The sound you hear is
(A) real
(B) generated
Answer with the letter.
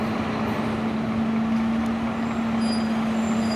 A